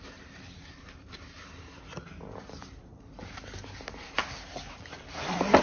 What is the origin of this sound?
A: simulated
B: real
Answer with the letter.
A